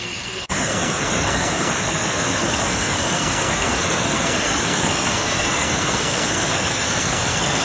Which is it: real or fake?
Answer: fake